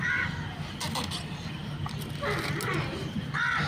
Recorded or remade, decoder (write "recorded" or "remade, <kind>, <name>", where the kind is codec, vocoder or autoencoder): recorded